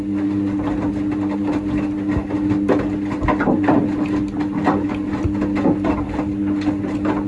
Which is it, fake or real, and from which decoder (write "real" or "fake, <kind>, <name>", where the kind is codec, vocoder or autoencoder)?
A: real